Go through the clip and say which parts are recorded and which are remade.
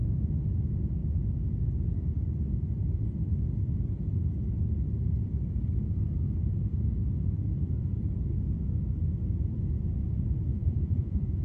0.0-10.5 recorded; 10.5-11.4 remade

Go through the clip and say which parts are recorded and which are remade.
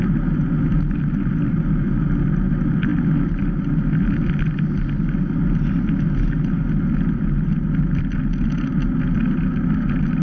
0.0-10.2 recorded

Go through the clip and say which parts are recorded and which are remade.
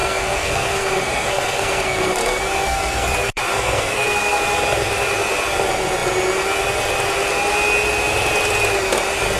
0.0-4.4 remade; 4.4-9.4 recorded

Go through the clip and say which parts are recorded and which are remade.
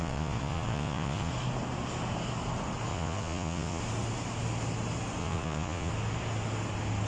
0.0-1.3 remade; 1.3-2.9 recorded; 2.9-3.8 remade; 3.8-5.2 recorded; 5.2-5.9 remade; 5.9-7.1 recorded